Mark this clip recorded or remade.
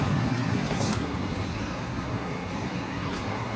remade